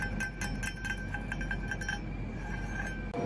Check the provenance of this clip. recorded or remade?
recorded